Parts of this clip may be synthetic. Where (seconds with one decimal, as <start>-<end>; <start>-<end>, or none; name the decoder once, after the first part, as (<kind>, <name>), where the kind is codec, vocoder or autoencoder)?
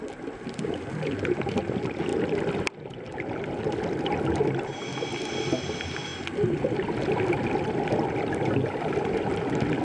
none